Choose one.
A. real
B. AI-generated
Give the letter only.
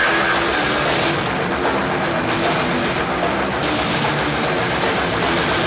A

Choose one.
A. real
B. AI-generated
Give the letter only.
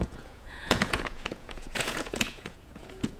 B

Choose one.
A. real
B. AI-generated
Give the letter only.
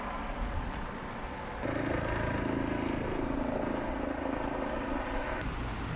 A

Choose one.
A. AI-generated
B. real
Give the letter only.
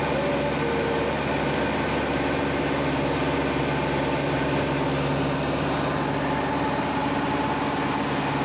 B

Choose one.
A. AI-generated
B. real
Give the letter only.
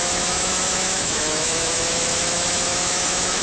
A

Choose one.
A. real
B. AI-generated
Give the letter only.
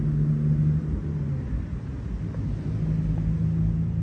A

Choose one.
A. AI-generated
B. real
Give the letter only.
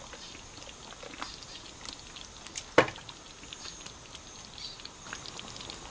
B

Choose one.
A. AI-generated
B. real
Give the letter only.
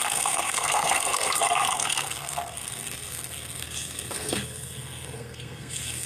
A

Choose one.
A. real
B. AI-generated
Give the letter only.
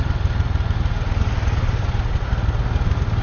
A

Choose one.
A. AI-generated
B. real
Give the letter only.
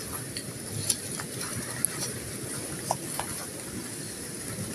B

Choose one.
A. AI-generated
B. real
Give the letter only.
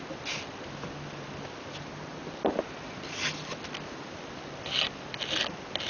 B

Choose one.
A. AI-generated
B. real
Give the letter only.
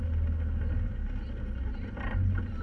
B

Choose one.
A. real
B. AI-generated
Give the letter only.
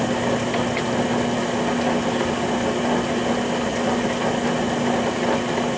A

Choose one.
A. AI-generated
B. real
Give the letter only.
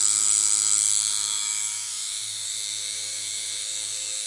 A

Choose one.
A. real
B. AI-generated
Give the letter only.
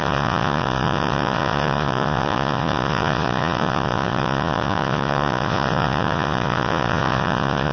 B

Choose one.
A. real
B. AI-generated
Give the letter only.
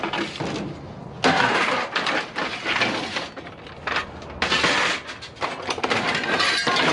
A